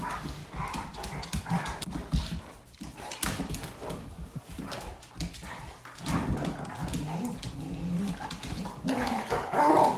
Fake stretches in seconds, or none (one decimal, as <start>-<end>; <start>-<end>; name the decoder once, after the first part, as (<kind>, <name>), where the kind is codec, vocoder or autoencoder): 0.0-0.4 (codec, DAC); 3.5-4.9; 8.8-10.0